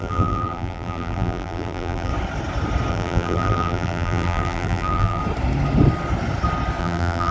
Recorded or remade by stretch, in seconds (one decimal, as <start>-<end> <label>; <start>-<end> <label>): 0.0-2.1 remade; 2.1-2.9 recorded; 2.9-5.2 remade; 5.2-6.8 recorded; 6.8-7.3 remade